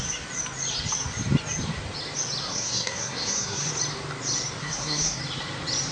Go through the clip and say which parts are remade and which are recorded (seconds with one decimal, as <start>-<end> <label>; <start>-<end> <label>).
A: 0.0-2.4 recorded; 2.4-3.7 remade; 3.7-4.6 recorded; 4.6-5.2 remade; 5.2-5.9 recorded